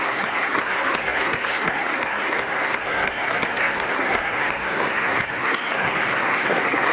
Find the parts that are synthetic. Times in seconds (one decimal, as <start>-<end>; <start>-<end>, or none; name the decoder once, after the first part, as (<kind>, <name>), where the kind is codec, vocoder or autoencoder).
0.0-6.9 (codec, SNAC)